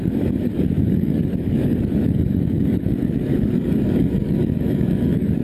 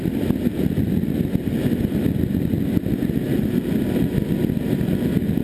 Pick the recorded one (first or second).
second